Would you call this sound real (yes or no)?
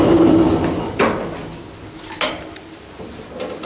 yes